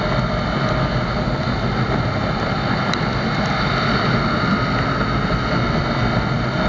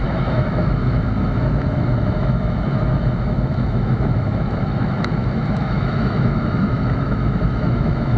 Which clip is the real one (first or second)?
first